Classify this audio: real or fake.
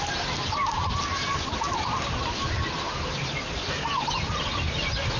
real